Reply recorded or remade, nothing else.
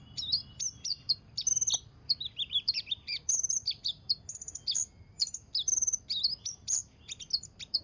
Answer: recorded